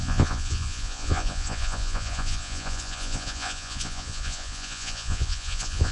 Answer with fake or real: fake